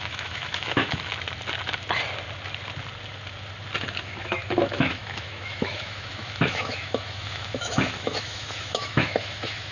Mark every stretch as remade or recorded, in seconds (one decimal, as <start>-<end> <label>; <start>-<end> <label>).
0.0-1.1 remade; 1.1-3.8 recorded; 3.8-9.7 remade